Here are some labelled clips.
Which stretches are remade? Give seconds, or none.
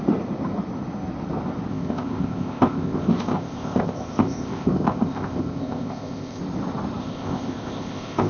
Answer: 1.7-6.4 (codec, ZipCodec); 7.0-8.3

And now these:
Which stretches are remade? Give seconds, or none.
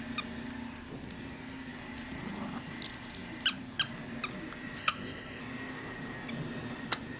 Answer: 4.8-5.4 (codec, ZipCodec)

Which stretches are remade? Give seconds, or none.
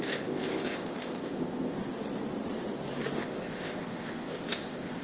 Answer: 0.0-1.8 (codec, ZipCodec); 3.2-5.0